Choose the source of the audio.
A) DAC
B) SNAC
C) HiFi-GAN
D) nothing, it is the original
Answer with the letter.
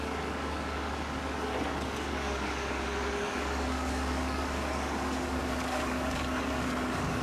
A